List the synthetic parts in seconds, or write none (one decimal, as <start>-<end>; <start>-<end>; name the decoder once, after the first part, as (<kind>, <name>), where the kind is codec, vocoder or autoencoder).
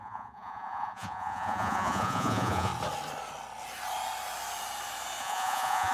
0.0-2.7 (vocoder, Vocos); 5.2-5.9